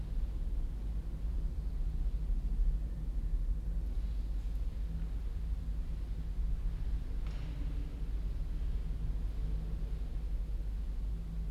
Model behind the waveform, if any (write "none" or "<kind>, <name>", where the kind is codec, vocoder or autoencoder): none